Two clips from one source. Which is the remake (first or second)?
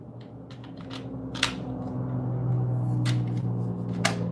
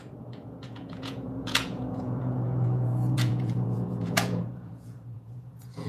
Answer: second